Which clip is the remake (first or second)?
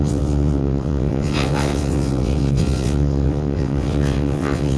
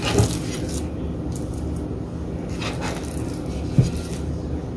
first